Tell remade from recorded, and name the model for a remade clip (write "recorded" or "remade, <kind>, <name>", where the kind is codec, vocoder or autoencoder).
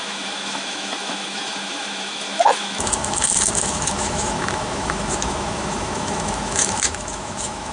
remade, autoencoder, DAC-VAE